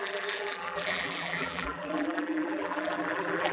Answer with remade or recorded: remade